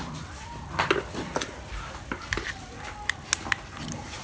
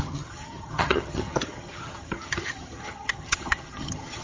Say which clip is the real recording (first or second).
first